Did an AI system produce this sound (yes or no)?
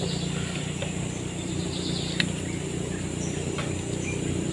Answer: no